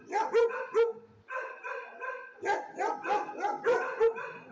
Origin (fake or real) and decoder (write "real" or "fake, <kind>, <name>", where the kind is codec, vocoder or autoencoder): real